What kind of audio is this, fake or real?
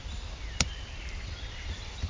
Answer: fake